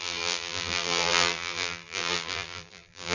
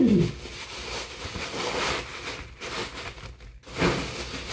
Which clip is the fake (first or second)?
first